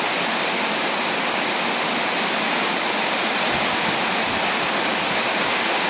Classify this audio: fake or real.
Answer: real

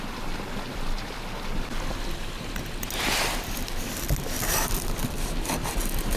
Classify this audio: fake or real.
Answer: real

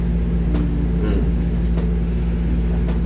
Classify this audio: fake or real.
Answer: real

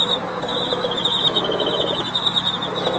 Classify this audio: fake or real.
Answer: real